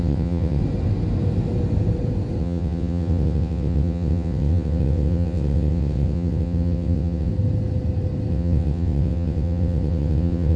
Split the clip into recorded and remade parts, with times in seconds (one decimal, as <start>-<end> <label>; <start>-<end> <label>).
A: 0.0-0.6 remade; 0.6-2.4 recorded; 2.4-7.3 remade; 7.3-8.3 recorded; 8.3-10.6 remade

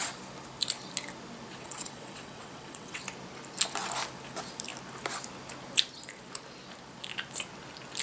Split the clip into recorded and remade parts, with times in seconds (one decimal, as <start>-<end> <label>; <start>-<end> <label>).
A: 0.0-1.6 recorded; 1.6-3.0 remade; 3.0-8.0 recorded